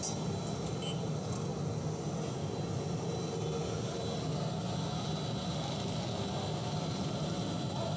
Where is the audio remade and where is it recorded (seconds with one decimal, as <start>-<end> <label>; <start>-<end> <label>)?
0.0-8.0 recorded